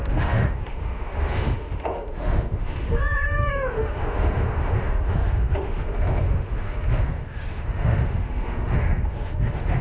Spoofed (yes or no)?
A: yes